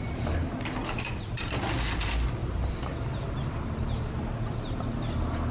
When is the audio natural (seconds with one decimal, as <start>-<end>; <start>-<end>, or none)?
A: 0.0-0.8; 1.7-2.4; 3.0-5.5